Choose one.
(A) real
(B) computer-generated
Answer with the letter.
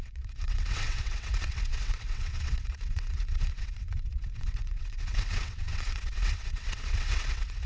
B